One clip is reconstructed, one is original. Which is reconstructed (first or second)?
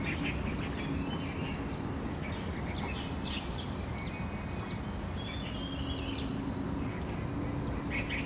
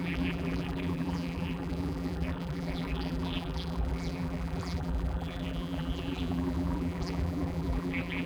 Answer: second